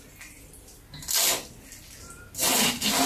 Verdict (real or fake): real